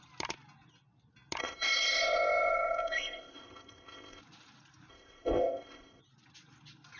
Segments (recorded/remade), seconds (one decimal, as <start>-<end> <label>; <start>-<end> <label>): 0.0-1.4 recorded; 1.4-4.2 remade; 4.2-4.9 recorded; 4.9-6.0 remade; 6.0-7.0 recorded